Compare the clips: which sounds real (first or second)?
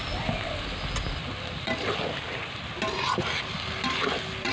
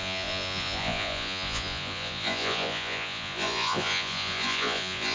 first